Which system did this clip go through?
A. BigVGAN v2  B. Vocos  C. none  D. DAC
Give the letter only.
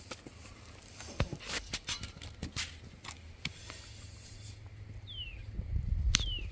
C